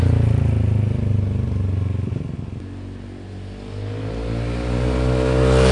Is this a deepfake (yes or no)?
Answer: no